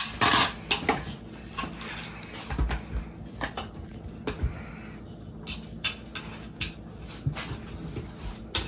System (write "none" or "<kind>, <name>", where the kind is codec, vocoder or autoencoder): none